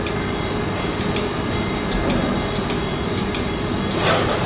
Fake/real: real